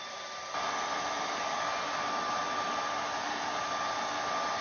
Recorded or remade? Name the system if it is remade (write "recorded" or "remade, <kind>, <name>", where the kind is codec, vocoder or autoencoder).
recorded